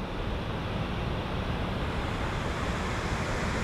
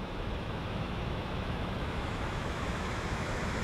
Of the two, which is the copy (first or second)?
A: second